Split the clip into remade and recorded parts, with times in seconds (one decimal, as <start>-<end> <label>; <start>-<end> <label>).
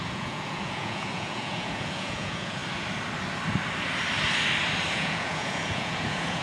0.0-2.6 remade; 2.6-4.9 recorded; 4.9-6.4 remade